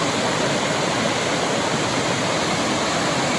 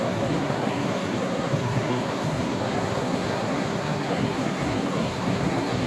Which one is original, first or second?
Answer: first